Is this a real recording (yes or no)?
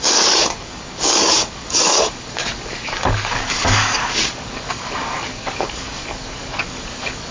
no